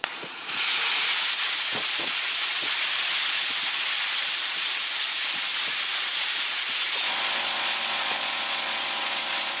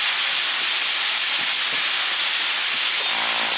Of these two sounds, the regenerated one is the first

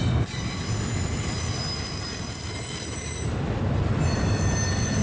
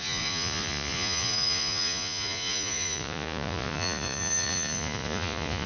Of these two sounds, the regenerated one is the second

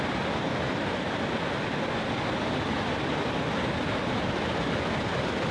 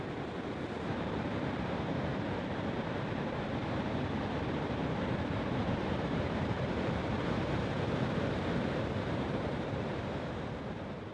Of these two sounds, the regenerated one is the second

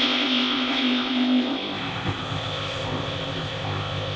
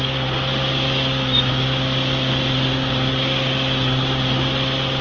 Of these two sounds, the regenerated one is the first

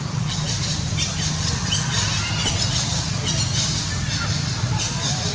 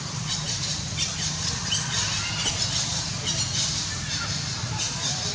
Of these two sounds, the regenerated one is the second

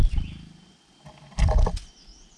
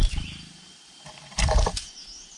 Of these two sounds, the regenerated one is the second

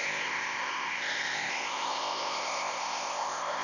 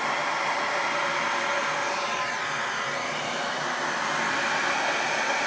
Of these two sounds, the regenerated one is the first